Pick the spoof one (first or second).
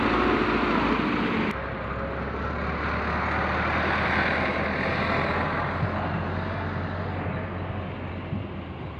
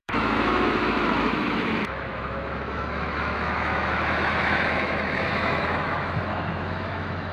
second